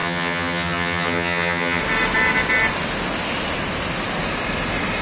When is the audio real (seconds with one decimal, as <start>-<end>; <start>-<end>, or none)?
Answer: 1.8-5.0